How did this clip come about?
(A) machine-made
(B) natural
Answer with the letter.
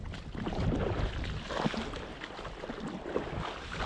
B